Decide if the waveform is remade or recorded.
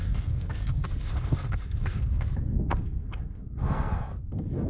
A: remade